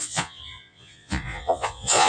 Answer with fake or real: fake